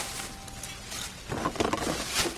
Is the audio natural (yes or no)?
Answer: yes